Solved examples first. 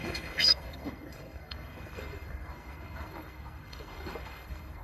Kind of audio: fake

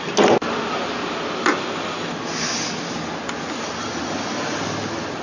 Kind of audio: real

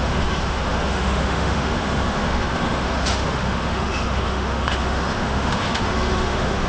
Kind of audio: fake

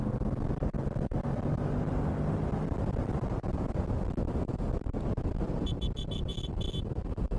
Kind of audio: real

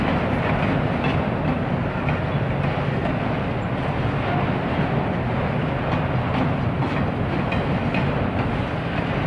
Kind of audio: real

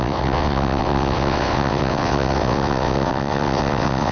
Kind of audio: fake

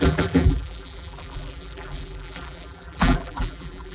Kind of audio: fake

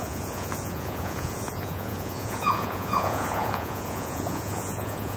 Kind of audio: fake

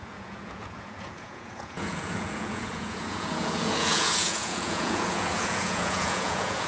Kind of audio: fake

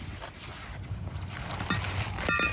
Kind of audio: real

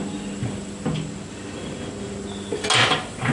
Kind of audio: real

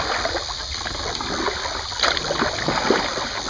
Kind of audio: real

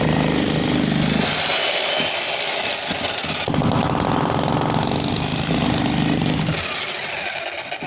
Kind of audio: real